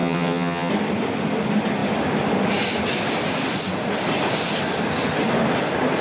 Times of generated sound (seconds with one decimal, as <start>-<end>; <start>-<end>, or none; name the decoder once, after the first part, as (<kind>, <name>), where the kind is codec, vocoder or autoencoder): 0.0-0.7 (vocoder, HiFi-GAN)